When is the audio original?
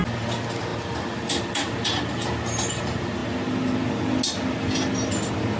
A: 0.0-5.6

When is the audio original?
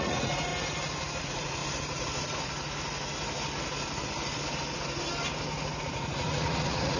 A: 0.5-1.2; 1.6-5.8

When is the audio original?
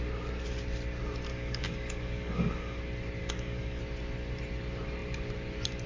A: 0.0-1.3; 2.8-3.2; 3.8-5.9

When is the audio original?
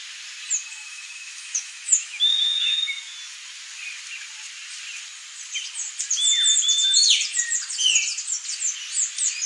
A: 0.0-0.8; 3.0-9.5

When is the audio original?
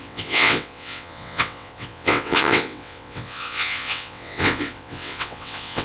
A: none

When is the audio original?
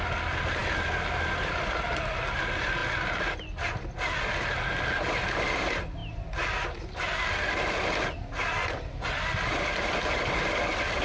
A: 0.0-11.0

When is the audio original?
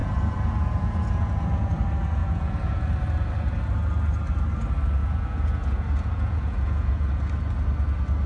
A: 1.7-2.2; 2.8-5.0; 7.1-8.3